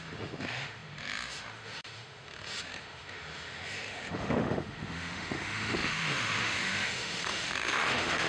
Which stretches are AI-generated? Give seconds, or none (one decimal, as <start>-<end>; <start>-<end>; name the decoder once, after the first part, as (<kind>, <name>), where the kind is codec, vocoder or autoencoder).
0.0-8.3 (autoencoder, DAC-VAE)